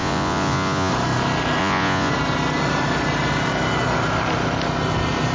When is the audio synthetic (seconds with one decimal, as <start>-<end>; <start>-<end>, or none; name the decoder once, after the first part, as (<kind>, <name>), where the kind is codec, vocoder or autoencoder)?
0.0-0.9 (vocoder, Vocos); 1.6-2.1